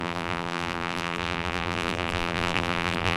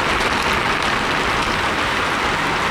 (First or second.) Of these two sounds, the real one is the second